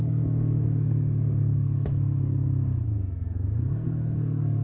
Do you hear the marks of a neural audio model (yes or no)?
yes